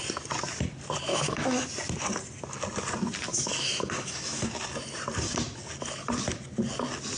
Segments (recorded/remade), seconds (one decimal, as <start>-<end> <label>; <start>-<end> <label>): 0.0-1.1 recorded; 1.1-1.7 remade; 1.7-3.3 recorded; 3.3-4.6 remade; 4.6-7.2 recorded